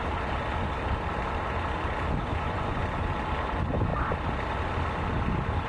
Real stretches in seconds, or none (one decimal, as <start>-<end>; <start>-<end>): 0.0-2.3; 2.8-5.7